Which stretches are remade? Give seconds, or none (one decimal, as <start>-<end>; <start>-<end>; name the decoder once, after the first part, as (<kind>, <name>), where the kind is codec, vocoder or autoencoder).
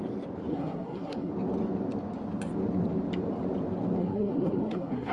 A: 0.5-1.3 (codec, SNAC); 4.0-5.1